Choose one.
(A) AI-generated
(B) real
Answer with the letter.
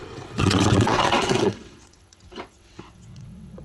A